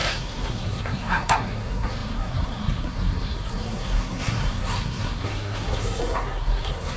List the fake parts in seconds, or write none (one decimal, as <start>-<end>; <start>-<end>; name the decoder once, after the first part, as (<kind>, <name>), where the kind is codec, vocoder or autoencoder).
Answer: 0.0-7.0 (codec, SNAC)